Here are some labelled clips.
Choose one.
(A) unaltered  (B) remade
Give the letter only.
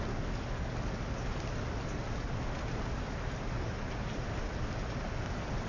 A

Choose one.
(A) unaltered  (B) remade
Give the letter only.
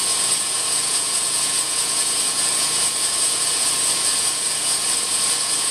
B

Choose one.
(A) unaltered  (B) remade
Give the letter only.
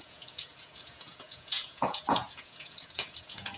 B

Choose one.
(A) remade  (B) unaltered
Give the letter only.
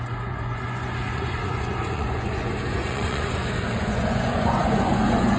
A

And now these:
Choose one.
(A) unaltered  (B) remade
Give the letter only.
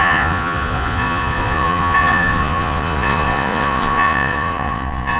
B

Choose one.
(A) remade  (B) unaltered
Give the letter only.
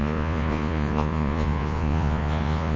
A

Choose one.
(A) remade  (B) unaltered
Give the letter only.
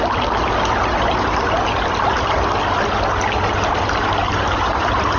B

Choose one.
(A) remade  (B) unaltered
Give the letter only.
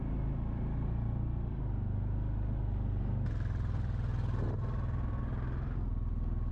B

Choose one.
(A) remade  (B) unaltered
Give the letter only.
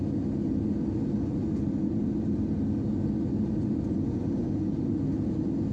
B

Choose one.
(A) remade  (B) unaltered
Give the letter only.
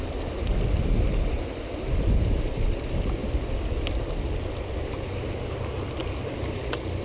B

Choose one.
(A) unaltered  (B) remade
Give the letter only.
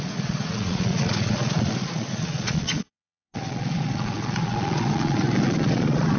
B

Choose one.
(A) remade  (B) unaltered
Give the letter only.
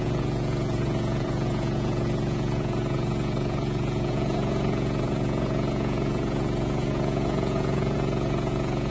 A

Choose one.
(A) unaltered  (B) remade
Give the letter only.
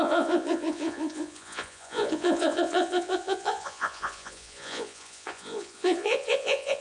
B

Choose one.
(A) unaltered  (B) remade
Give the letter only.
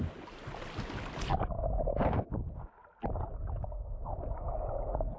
A